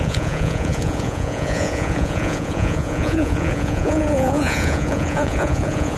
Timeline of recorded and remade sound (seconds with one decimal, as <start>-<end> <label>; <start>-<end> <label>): 0.0-6.0 remade